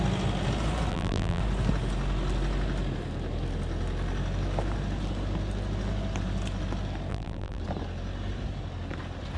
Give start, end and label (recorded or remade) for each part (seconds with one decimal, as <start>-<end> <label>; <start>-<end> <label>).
0.0-0.9 recorded; 0.9-1.4 remade; 1.4-7.1 recorded; 7.1-7.6 remade; 7.6-9.4 recorded